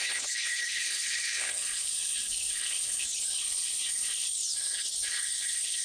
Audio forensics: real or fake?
fake